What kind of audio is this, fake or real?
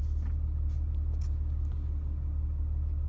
real